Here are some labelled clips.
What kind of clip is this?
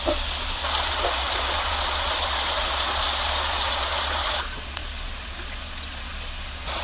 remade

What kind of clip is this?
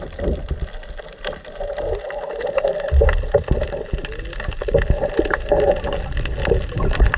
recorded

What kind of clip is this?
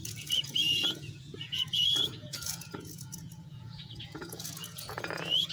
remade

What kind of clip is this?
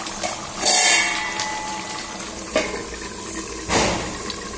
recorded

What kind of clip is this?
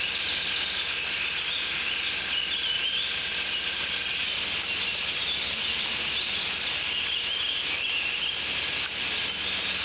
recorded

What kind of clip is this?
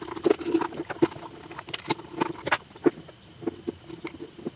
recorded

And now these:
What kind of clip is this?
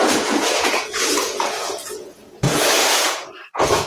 remade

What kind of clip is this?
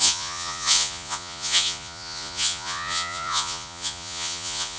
remade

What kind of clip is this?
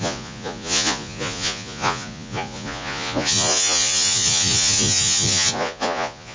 remade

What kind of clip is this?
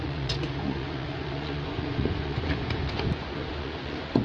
remade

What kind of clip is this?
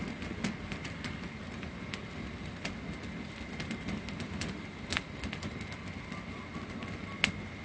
recorded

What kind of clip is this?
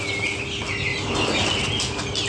recorded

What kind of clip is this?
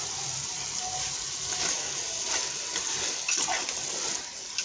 recorded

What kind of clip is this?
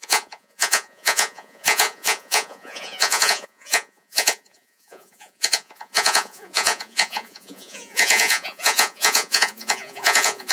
remade